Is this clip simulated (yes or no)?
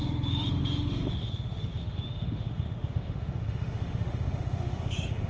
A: yes